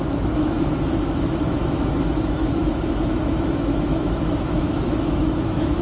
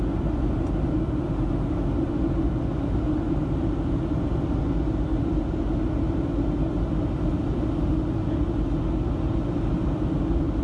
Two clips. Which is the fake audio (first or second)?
first